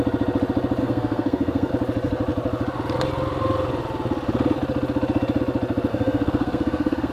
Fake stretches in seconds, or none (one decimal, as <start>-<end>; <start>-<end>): 0.8-1.7; 5.9-7.1